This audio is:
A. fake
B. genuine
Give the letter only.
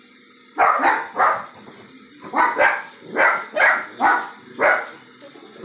B